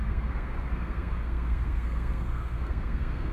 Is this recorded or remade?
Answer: remade